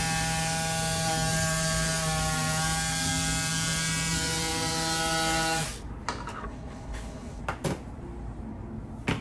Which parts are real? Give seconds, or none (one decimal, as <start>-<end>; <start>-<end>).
0.0-6.3; 7.4-9.2